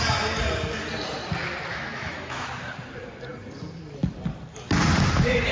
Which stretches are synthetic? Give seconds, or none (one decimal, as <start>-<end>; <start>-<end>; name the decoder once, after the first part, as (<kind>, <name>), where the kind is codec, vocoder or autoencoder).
1.7-2.5 (autoencoder, DAC-VAE)